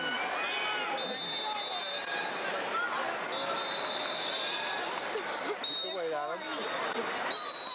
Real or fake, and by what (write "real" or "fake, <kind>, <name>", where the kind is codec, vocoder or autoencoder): real